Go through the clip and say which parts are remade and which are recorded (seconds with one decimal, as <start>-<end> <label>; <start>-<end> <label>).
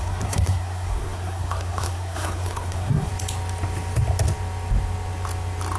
0.0-3.1 remade; 3.1-5.8 recorded